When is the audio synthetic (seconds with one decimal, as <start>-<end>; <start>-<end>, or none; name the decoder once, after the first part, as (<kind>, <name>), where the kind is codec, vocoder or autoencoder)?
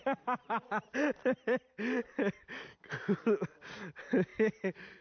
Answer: none